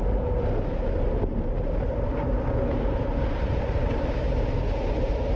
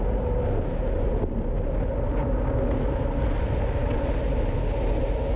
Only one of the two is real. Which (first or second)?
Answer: second